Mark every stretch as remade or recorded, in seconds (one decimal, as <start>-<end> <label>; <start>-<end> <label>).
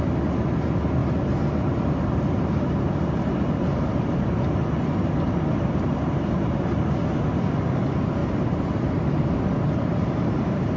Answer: 0.0-10.8 recorded